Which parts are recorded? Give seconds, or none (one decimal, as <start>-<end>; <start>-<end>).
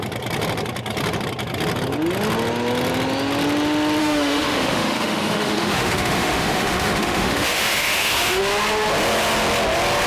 0.0-4.0; 8.4-10.1